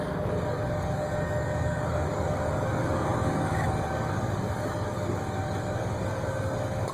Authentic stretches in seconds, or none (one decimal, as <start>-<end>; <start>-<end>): none